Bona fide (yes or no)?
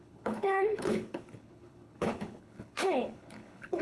no